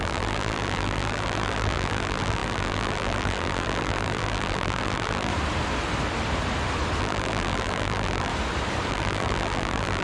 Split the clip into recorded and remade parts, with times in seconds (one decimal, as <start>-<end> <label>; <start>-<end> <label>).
0.0-5.3 remade; 5.3-7.0 recorded; 7.0-8.3 remade; 8.3-8.9 recorded; 8.9-10.0 remade